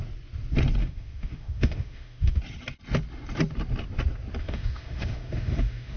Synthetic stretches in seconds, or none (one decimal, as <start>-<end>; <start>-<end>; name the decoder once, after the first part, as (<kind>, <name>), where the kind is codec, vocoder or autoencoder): 0.8-2.4 (autoencoder, DAC-VAE); 4.4-6.0